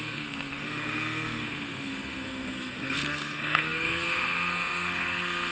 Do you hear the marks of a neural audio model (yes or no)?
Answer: yes